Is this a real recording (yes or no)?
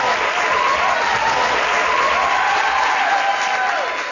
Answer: yes